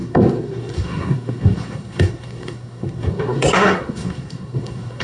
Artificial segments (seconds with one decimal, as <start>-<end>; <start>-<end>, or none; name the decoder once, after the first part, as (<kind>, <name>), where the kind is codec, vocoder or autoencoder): 0.0-5.0 (codec, SNAC)